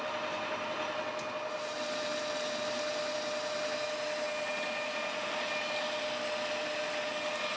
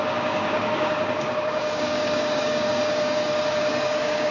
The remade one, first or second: second